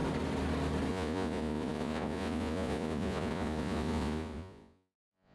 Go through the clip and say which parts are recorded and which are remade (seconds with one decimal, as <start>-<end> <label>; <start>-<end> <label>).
0.0-0.9 recorded; 0.9-5.3 remade